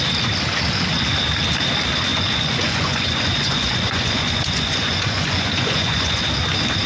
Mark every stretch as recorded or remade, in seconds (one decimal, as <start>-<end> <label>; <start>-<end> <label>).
0.0-2.1 recorded; 2.1-6.2 remade; 6.2-6.9 recorded